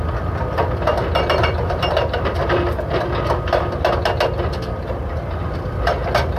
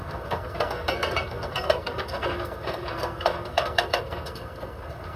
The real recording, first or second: first